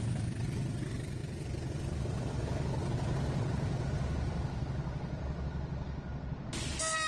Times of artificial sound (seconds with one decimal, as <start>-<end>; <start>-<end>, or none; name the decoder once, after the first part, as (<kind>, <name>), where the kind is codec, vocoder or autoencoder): none